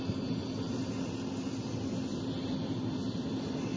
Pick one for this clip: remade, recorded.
recorded